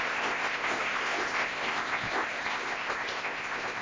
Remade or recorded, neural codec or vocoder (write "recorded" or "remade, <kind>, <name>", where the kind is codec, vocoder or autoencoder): remade, codec, ZipCodec